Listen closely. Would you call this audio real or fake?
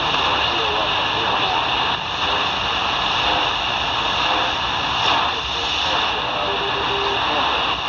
real